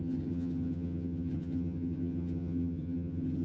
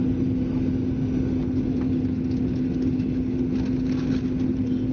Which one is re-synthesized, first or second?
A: first